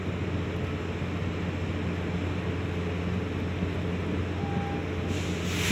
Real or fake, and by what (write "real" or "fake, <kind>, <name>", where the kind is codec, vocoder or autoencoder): real